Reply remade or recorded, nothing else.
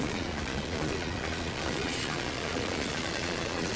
remade